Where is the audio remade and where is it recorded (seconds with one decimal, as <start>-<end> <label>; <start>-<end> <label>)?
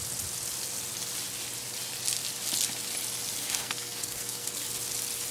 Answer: 0.0-3.4 recorded; 3.4-4.6 remade; 4.6-5.3 recorded